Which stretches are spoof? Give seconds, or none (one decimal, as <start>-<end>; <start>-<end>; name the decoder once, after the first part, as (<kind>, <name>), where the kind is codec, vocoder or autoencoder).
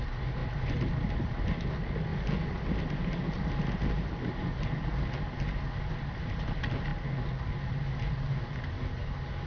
none